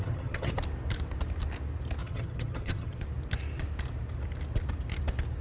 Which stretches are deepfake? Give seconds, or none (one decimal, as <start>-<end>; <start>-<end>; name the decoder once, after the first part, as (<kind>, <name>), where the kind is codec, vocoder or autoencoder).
0.0-0.6 (vocoder, HiFi-GAN); 2.0-3.0